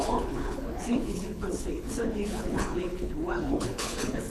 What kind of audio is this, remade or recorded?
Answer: remade